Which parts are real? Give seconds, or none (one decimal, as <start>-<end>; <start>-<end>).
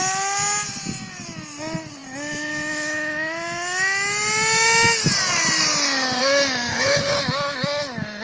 0.0-6.7; 7.2-8.2